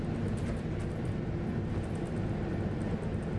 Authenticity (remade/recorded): remade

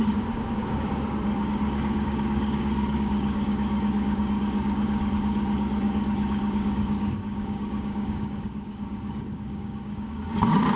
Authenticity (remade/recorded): remade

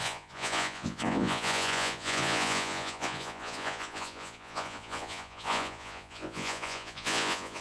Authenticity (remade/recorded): remade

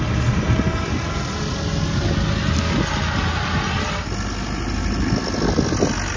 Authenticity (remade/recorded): recorded